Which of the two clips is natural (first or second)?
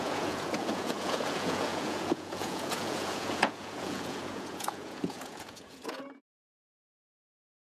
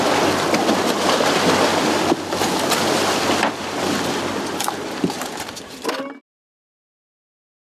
second